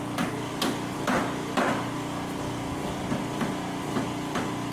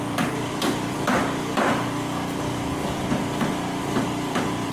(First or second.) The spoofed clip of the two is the second